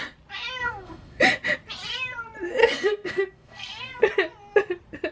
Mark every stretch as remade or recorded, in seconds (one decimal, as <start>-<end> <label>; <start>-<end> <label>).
0.0-0.6 recorded; 0.6-1.2 remade; 1.2-2.6 recorded; 2.6-4.0 remade; 4.0-5.1 recorded